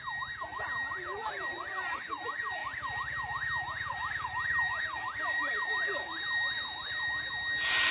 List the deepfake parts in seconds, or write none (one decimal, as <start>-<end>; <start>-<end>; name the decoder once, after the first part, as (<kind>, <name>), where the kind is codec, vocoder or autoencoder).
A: 2.6-7.3 (vocoder, BigVGAN v2)